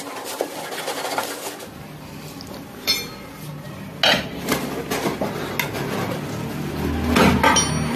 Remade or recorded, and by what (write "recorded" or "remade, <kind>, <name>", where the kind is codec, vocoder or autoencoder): recorded